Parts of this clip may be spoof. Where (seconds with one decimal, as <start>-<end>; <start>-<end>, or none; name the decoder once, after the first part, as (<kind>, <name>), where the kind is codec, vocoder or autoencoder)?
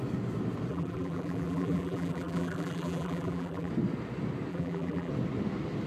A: 0.7-3.7 (vocoder, BigVGAN v2); 4.5-5.1